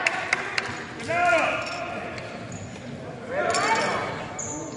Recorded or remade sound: recorded